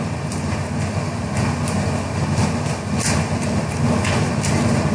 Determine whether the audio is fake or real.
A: real